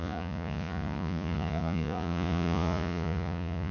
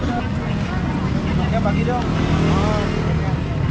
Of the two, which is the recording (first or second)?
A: second